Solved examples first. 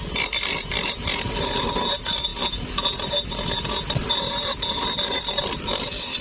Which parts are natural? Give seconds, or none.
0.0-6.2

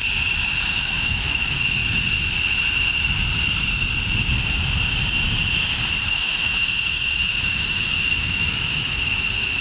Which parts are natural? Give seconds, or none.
0.0-0.7; 1.8-6.1

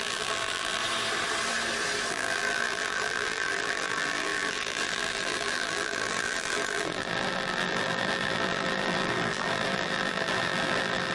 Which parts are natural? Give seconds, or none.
0.8-2.1

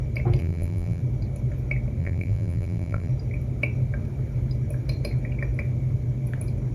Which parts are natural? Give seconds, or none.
0.0-0.4; 1.0-2.0; 3.1-6.7

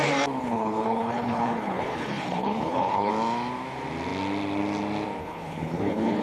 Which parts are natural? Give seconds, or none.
0.0-0.4; 3.1-5.2

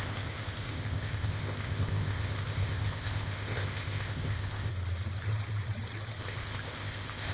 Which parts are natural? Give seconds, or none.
4.7-6.2

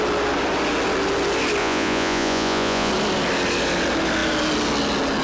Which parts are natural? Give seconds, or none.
0.0-1.6; 2.9-5.2